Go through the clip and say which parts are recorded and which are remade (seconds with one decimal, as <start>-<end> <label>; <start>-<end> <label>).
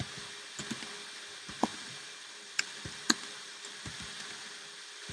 0.0-1.7 recorded; 1.7-5.1 remade